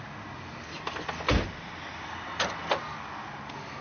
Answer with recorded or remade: recorded